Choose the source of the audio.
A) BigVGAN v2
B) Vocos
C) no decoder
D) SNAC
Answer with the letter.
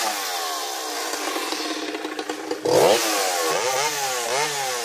C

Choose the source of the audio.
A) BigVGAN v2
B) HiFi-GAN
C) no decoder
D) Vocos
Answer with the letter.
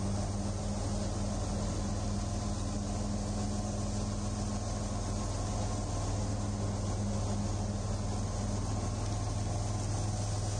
C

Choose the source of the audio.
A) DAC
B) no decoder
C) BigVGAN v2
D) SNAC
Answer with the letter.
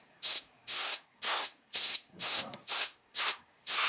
D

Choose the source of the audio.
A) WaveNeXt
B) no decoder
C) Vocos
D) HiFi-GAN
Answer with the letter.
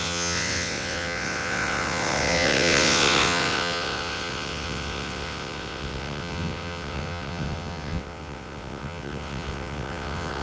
A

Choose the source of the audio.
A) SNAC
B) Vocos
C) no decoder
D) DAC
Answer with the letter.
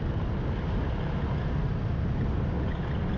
C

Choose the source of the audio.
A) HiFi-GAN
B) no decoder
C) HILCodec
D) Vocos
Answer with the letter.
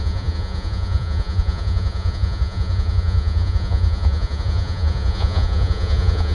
D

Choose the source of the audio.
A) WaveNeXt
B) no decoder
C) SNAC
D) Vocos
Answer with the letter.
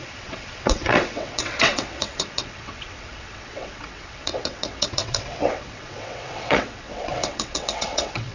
A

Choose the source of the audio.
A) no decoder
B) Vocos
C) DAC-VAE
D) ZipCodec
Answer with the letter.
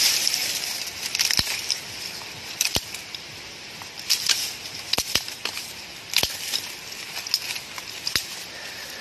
A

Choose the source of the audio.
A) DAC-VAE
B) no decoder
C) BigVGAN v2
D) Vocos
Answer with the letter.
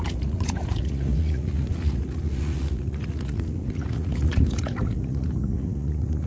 D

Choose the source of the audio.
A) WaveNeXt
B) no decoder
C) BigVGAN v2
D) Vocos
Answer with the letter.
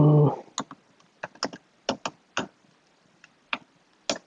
B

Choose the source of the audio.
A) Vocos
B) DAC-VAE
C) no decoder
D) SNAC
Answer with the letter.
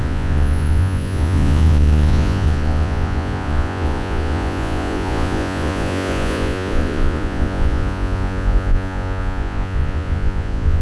A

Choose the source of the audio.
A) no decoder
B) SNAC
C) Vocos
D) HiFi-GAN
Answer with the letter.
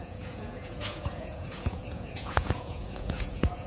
C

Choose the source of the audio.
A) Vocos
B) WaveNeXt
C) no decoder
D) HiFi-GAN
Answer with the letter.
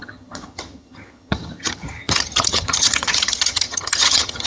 D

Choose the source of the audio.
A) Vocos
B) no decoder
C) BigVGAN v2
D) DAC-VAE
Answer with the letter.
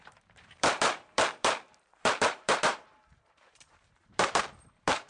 C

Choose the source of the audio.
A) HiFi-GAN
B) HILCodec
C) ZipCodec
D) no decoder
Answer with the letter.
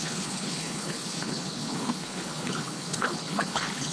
B